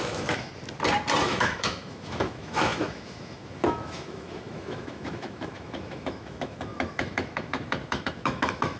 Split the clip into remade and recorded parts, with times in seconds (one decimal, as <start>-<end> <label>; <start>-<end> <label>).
0.0-0.5 remade; 0.5-1.2 recorded; 1.2-8.8 remade